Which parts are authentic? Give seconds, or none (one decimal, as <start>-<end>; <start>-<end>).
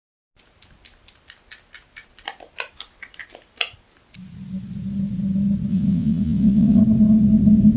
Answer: 0.0-5.7; 6.8-7.8